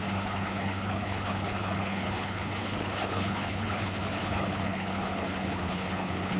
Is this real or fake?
fake